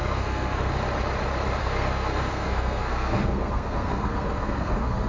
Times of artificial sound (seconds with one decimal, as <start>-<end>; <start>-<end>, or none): 0.0-0.7; 1.6-5.1